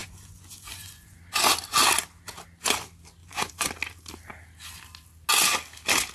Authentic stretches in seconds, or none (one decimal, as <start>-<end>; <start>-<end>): 1.2-3.2; 3.7-6.1